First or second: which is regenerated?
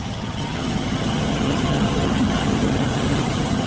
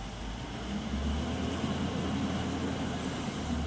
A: first